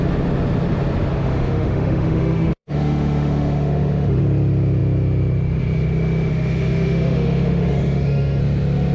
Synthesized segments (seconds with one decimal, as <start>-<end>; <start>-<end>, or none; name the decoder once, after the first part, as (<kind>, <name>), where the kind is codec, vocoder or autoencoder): 1.2-4.2 (autoencoder, DAC-VAE); 6.3-8.4